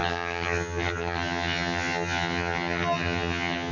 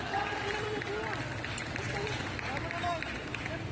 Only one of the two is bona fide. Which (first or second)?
second